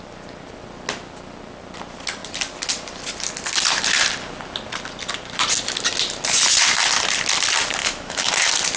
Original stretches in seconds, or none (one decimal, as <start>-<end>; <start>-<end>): 0.0-7.8; 8.3-8.8

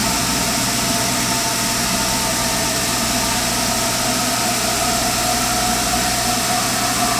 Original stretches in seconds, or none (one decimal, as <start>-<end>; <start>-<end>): 0.0-7.2